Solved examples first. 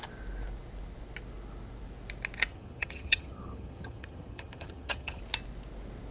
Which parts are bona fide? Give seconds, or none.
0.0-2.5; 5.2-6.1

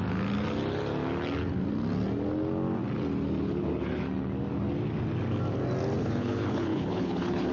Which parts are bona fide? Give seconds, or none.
0.0-6.0

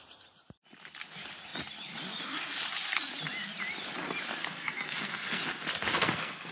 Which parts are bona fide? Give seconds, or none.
0.0-4.4; 5.4-5.9

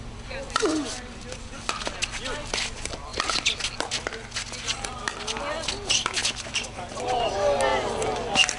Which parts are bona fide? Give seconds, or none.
0.0-0.7; 1.5-6.2; 7.0-7.7

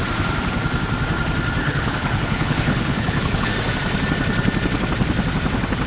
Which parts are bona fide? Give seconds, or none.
0.0-1.6; 3.5-5.9

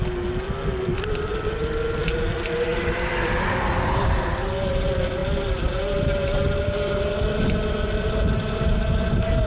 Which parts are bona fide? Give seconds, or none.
0.0-9.5